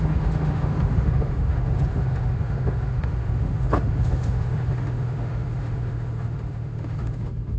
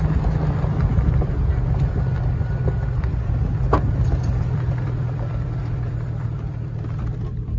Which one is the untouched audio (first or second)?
second